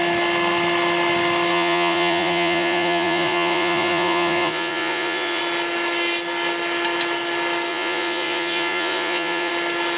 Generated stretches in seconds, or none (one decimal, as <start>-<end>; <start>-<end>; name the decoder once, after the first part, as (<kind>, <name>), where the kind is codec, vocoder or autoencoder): 1.5-5.4 (vocoder, Vocos); 7.7-9.5